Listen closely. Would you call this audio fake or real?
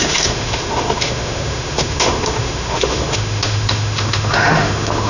fake